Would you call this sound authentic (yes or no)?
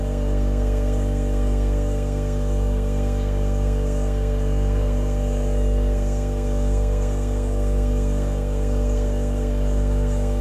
no